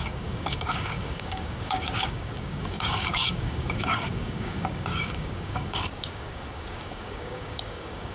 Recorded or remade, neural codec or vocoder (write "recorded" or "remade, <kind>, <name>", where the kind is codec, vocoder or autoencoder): remade, codec, DAC